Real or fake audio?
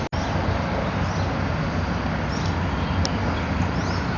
real